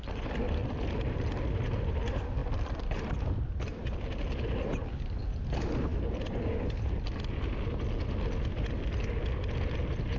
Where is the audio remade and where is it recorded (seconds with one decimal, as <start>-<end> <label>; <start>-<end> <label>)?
0.0-10.2 recorded